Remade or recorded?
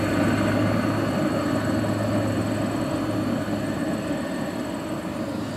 recorded